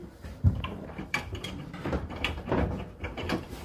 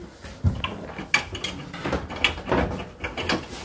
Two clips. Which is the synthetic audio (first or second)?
first